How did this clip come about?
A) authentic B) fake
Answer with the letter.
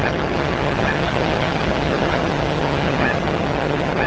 B